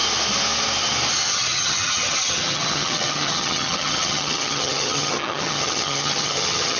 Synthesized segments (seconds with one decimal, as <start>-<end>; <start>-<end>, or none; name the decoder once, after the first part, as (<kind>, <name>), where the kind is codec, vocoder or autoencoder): 1.3-6.8 (vocoder, HiFi-GAN)